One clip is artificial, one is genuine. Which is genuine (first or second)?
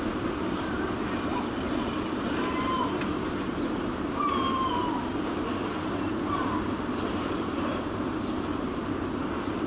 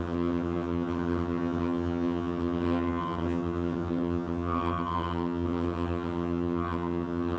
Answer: first